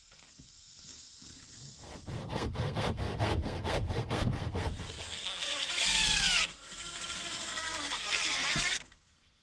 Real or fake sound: fake